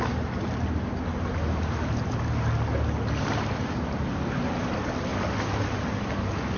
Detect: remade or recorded recorded